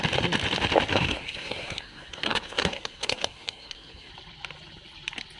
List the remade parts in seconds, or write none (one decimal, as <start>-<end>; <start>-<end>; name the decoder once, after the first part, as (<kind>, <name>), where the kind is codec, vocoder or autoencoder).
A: 0.9-4.1 (codec, SNAC)